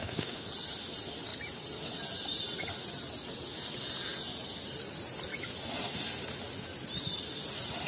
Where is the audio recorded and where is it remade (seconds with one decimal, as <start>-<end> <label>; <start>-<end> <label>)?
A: 0.0-0.5 remade; 0.5-7.9 recorded